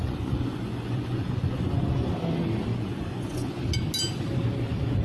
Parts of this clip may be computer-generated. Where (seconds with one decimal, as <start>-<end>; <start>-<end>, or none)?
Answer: 0.0-2.1; 2.7-3.6